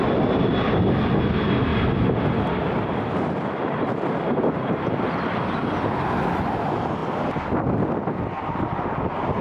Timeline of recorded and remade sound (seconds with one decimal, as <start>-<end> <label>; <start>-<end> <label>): 0.0-9.4 recorded